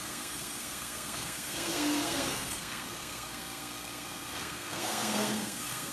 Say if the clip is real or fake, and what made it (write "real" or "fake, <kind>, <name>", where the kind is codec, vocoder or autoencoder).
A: fake, codec, SNAC